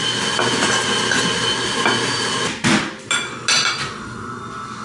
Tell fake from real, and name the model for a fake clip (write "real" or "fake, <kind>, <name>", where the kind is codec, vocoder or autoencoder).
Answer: real